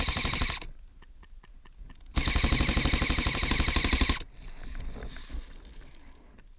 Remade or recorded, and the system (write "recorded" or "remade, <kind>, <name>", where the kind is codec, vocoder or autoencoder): recorded